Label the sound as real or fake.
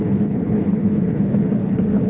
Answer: fake